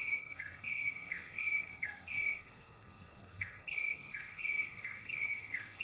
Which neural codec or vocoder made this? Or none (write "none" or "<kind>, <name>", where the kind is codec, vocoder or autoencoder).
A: codec, SNAC